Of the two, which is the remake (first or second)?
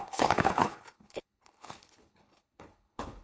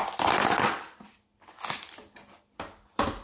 first